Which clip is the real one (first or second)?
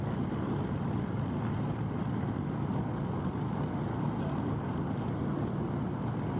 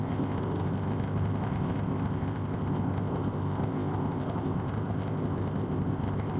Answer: first